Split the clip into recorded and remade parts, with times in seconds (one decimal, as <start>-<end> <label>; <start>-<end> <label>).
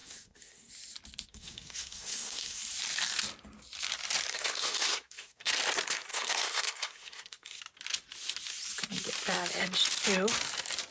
0.0-0.7 remade; 0.7-1.3 recorded; 1.3-2.6 remade; 2.6-4.3 recorded; 4.3-5.5 remade; 5.5-6.1 recorded; 6.1-7.6 remade; 7.6-10.9 recorded